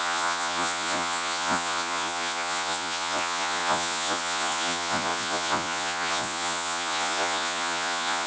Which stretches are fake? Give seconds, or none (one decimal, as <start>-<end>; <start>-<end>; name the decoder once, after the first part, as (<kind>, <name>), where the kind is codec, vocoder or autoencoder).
0.0-8.3 (vocoder, Vocos)

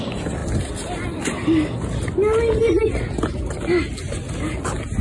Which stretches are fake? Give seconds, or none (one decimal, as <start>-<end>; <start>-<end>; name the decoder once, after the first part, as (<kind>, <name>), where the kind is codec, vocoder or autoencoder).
none